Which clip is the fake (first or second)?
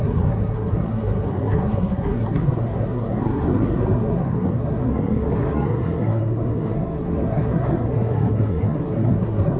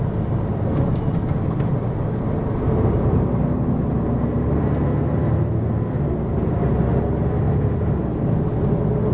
first